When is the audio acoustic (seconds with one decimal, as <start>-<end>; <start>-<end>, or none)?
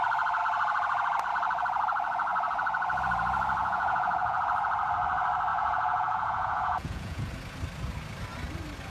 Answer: 0.0-3.6; 4.4-5.5; 7.3-8.9